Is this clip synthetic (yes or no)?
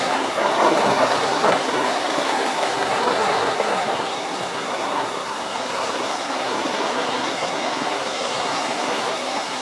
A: yes